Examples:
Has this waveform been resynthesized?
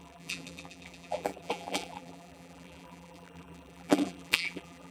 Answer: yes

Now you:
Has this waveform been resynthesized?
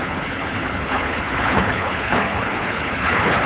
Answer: yes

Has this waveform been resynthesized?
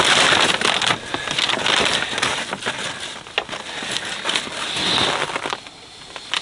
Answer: no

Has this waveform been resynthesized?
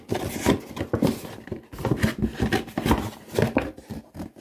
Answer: no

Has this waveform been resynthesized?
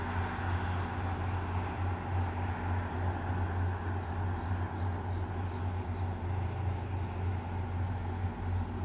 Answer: no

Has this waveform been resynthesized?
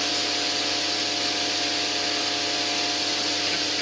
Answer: no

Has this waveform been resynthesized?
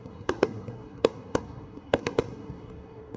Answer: yes